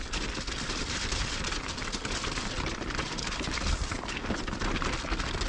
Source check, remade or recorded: recorded